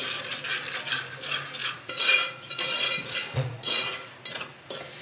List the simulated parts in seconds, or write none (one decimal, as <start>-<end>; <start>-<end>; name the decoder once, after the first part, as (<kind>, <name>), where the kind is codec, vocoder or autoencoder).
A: 1.6-4.1 (vocoder, Vocos)

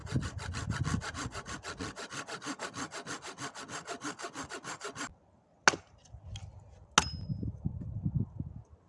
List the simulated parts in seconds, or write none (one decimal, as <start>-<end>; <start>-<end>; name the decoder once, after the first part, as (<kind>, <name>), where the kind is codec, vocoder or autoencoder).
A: none

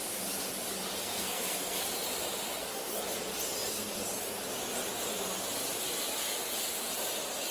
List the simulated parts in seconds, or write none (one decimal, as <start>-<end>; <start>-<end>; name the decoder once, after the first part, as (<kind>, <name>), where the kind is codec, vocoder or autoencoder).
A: 1.0-1.8 (codec, SNAC); 2.5-3.0

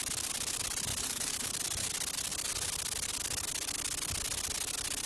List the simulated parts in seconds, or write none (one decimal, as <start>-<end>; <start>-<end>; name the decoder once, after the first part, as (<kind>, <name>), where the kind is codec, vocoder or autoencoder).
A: 0.9-1.5 (vocoder, BigVGAN v2)

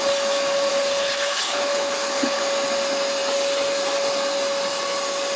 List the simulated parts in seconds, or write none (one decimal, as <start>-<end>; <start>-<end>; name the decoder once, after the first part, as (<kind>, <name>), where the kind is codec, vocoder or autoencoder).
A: 0.7-2.4 (codec, HILCodec)

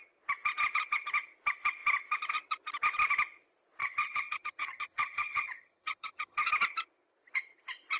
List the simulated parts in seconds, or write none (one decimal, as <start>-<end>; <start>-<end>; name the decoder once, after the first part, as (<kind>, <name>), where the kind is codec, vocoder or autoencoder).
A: 3.8-6.5 (vocoder, HiFi-GAN)